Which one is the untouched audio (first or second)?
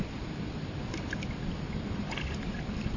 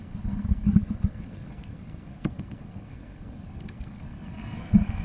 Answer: first